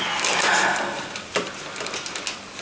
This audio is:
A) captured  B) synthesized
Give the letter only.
A